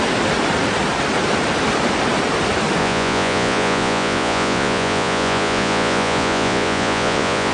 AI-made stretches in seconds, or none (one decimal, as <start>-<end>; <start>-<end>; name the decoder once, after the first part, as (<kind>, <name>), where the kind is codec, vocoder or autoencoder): 2.8-7.5 (vocoder, Vocos)